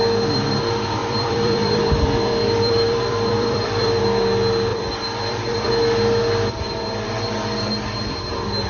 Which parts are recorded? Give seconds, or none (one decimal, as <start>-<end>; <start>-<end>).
0.0-1.0; 4.0-4.7; 5.7-8.7